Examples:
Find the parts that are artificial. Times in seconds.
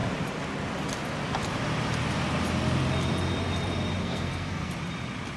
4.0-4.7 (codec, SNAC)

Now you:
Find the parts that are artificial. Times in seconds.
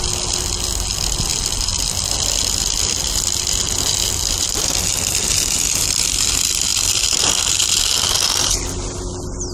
6.7-7.8 (vocoder, BigVGAN v2)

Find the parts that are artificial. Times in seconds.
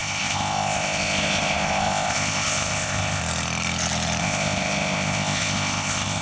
0.0-3.2 (codec, ZipCodec); 4.2-6.2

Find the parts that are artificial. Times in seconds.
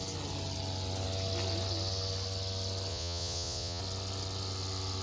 2.9-3.8 (vocoder, Vocos)